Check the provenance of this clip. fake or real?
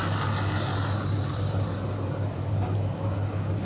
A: real